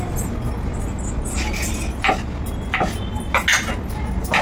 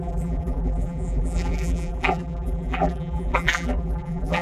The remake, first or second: second